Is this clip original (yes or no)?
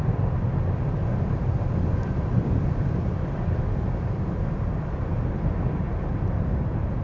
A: yes